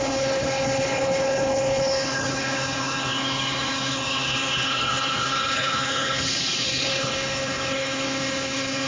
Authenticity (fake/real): fake